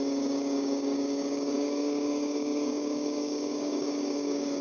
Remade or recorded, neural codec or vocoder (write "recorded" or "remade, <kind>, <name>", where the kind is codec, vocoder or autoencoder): remade, codec, DAC